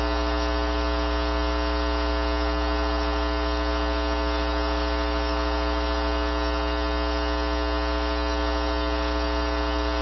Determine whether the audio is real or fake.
real